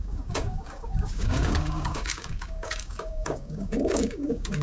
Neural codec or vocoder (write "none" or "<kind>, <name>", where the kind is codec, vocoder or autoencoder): codec, DAC